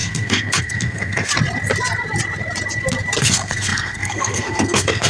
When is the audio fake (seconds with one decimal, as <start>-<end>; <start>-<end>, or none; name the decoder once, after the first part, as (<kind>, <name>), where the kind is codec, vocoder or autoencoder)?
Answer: 0.0-1.3 (codec, SNAC); 3.2-5.1